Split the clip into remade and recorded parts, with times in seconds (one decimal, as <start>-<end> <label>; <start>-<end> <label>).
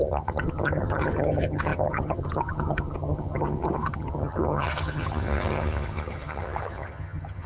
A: 0.0-7.5 remade